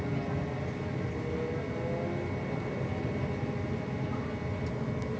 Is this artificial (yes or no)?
no